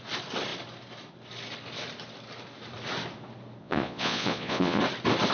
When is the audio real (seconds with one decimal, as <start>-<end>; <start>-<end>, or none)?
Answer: 0.0-3.6; 4.8-5.3